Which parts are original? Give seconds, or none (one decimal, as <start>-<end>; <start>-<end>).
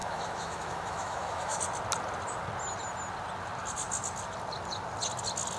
1.6-5.6